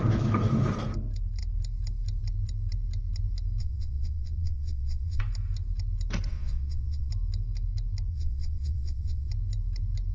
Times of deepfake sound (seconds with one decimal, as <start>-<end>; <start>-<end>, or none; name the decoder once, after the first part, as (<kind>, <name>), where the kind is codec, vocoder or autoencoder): 3.6-5.2 (vocoder, Vocos); 6.3-7.1; 8.1-9.3